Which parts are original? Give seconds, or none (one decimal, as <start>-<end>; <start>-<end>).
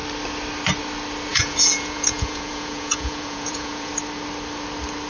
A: 0.0-1.3; 3.9-5.1